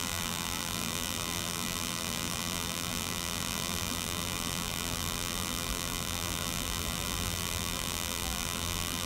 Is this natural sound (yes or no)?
no